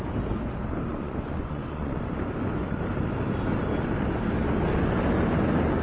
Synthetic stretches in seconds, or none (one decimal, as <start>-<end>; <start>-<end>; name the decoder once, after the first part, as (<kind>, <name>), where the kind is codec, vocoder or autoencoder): 0.9-2.0 (vocoder, Vocos)